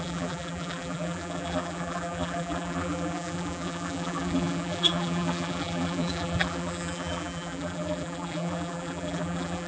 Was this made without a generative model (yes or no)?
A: no